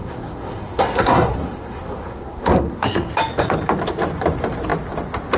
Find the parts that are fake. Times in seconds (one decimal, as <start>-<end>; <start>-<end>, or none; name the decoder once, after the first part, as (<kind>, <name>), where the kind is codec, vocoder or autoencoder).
0.0-3.1 (codec, SNAC)